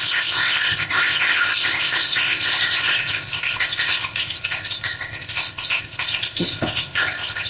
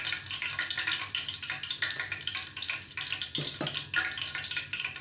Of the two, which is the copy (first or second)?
first